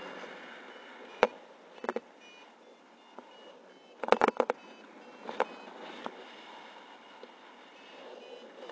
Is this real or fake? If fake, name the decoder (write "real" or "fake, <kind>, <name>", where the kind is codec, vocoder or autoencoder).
real